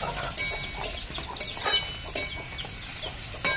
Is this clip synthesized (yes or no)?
no